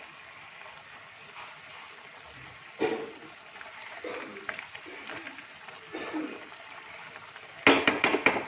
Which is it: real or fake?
real